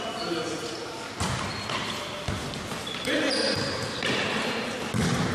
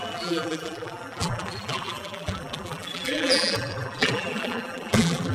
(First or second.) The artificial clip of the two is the second